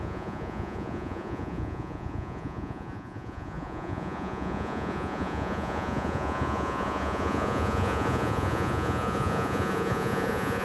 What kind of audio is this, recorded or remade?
remade